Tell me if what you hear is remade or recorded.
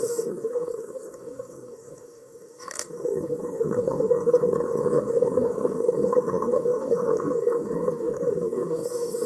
remade